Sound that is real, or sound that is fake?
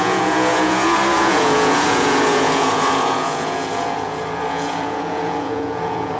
fake